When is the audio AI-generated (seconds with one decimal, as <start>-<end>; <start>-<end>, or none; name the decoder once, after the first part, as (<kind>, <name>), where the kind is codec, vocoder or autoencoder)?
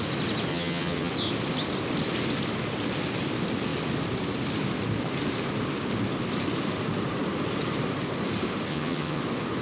0.5-1.1 (vocoder, HiFi-GAN); 8.7-9.2